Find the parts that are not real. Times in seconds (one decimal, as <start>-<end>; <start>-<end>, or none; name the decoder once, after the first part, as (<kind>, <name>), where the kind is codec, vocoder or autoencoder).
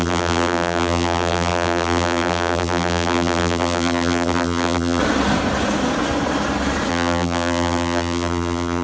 0.0-5.0 (vocoder, BigVGAN v2); 6.9-8.8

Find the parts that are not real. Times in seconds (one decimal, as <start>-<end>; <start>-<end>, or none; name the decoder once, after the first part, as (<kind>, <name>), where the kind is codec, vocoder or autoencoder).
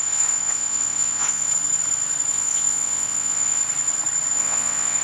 0.0-1.5 (vocoder, WaveNeXt); 2.3-3.6; 4.3-5.0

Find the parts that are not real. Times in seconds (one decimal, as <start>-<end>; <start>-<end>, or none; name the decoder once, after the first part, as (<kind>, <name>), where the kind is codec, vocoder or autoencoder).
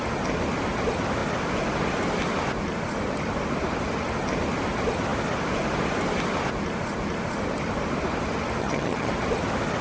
8.6-9.1 (vocoder, HiFi-GAN)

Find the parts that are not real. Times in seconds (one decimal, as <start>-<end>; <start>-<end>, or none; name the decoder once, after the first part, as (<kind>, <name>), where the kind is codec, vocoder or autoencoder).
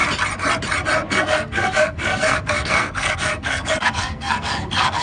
1.1-5.0 (codec, SNAC)